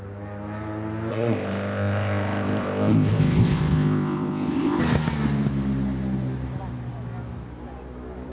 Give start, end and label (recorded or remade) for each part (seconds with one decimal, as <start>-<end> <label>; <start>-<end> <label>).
0.0-1.1 recorded; 1.1-4.8 remade; 4.8-8.3 recorded